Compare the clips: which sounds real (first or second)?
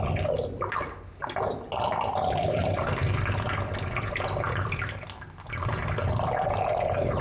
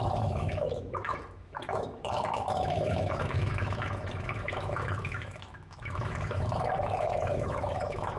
first